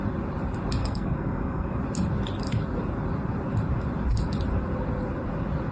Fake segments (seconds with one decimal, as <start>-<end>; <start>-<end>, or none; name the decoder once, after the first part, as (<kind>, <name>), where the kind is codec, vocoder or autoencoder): 0.8-1.8 (codec, SNAC)